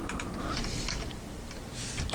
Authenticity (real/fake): real